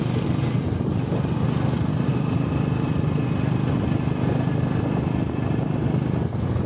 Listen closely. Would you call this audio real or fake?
real